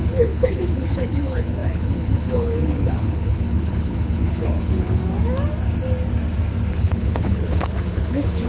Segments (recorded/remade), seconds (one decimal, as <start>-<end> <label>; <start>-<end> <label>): 0.0-5.0 remade; 5.0-6.7 recorded; 6.7-8.5 remade